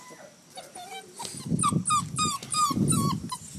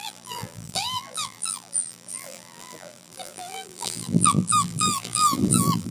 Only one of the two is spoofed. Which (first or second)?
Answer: second